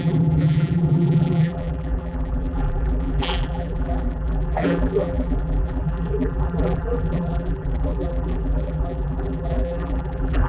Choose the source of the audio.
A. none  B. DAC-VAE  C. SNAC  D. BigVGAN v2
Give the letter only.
D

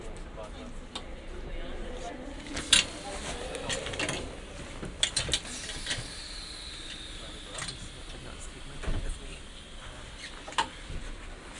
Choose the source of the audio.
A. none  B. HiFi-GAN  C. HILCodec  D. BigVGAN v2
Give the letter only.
A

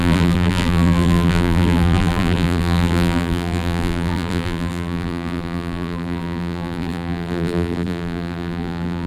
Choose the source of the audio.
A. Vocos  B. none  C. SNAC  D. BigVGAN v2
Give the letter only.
D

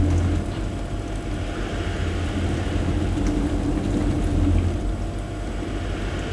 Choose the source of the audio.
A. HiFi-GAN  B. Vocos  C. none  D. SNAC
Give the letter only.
C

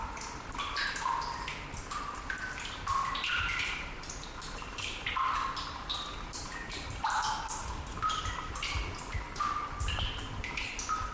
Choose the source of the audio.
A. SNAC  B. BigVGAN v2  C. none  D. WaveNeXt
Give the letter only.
C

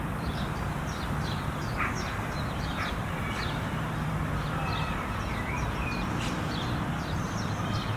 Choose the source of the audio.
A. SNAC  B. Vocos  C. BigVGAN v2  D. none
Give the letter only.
C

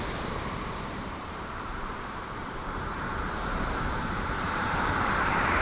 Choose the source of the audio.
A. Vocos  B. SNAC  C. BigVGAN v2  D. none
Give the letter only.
C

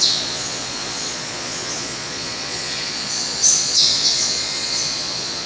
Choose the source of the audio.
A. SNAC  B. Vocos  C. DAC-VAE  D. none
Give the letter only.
B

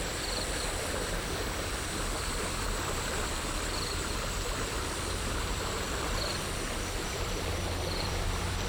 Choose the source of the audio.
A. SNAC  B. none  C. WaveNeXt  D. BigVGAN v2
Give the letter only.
D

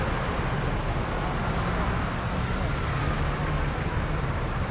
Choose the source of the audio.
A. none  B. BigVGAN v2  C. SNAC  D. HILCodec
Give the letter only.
A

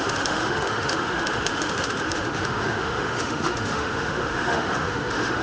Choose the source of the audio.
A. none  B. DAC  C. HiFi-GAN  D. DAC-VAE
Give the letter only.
D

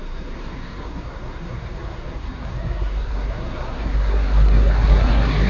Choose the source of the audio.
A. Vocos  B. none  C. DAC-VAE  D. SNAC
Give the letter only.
D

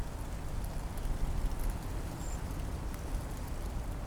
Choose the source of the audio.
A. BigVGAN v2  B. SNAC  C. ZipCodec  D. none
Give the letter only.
D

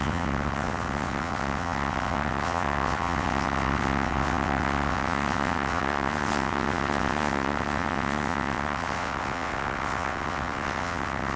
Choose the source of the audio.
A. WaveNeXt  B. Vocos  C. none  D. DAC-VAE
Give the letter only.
A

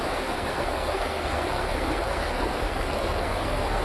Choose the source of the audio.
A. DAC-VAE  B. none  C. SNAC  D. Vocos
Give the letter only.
C